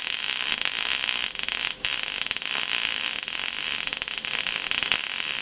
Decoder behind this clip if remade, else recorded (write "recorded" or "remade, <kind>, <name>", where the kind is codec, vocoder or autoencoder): remade, vocoder, BigVGAN v2